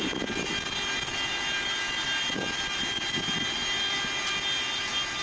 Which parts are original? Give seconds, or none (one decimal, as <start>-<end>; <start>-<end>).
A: 0.0-5.2